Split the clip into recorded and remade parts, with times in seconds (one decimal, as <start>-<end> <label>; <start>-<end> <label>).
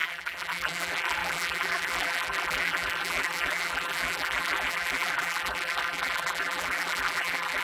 0.0-7.6 remade